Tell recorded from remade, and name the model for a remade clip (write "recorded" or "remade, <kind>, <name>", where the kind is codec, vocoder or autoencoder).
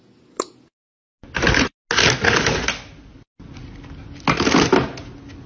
recorded